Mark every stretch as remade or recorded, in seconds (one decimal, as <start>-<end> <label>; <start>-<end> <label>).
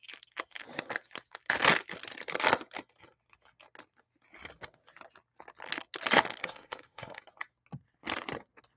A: 0.0-6.4 recorded; 6.4-7.2 remade; 7.2-8.8 recorded